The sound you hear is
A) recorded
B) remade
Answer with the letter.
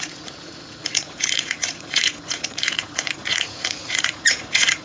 B